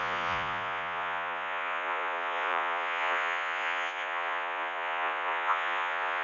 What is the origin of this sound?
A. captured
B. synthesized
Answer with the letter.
B